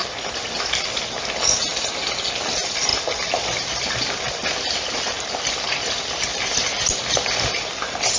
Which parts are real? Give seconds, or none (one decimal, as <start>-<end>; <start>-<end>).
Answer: 0.0-2.9; 5.3-6.3; 7.0-8.2